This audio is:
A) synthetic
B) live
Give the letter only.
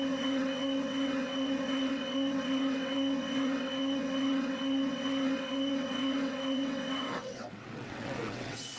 A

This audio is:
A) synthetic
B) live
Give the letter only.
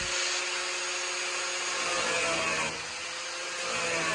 B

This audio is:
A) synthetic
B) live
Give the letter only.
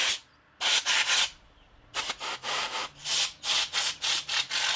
A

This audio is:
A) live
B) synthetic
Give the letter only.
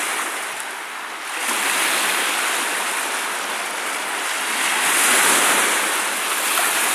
A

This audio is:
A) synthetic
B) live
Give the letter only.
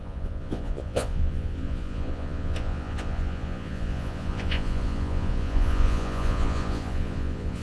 A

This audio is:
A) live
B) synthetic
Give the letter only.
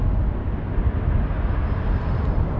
A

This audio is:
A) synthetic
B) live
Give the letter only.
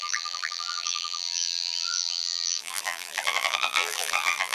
A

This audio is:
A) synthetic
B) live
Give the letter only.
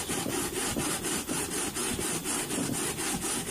B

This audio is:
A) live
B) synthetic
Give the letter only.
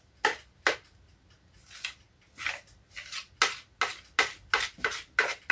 A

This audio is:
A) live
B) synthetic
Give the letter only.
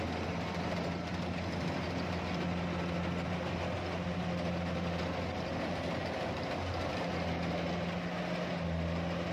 A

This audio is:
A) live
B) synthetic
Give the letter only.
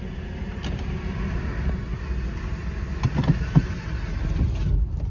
A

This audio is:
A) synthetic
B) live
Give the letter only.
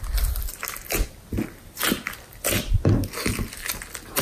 B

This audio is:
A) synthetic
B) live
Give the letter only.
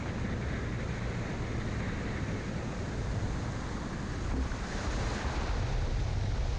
B